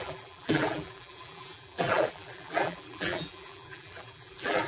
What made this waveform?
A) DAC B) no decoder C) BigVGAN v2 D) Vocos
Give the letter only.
C